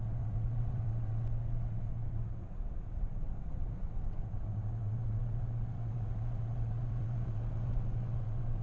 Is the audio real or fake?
fake